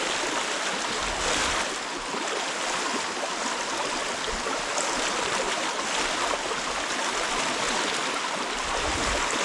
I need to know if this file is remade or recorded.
recorded